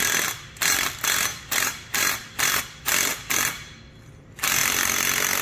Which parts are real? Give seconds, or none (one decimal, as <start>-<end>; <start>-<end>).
0.0-1.3; 2.6-3.1; 3.8-5.4

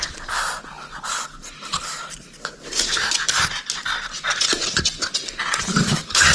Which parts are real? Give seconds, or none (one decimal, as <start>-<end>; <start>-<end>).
0.0-4.3; 4.8-6.3

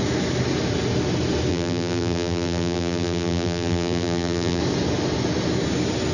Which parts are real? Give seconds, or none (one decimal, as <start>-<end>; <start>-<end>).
0.0-1.5; 4.6-6.1